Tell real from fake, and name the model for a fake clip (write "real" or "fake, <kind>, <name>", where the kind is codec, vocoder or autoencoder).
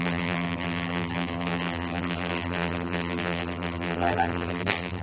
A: fake, vocoder, BigVGAN v2